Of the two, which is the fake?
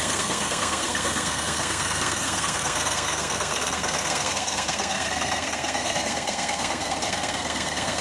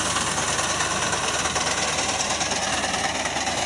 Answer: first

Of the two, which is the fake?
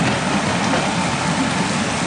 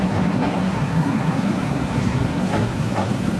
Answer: second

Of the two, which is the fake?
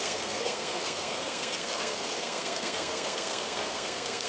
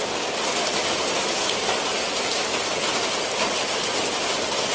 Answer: first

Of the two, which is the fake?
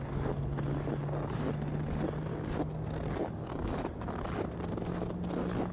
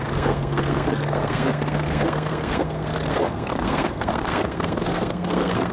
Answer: second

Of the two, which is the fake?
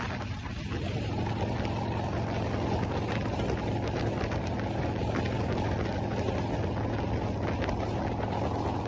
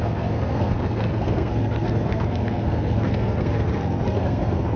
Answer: second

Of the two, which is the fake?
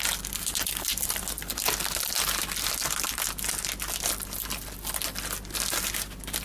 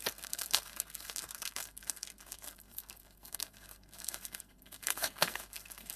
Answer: second